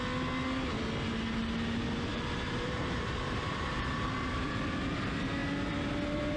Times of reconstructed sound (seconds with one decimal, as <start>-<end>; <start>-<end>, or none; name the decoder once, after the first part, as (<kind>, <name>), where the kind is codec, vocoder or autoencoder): 2.1-4.6 (vocoder, BigVGAN v2)